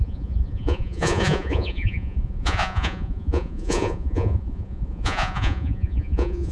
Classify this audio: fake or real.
fake